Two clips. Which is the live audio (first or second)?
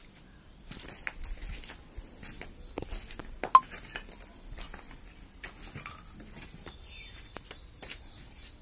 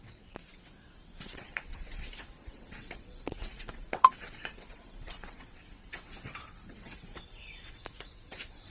first